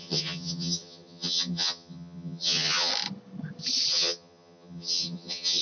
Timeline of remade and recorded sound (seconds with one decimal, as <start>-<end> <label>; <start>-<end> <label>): 0.0-2.9 remade; 2.9-3.9 recorded; 3.9-5.6 remade